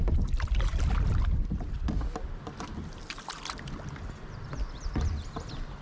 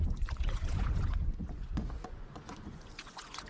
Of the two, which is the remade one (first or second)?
second